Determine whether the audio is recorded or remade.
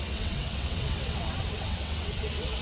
remade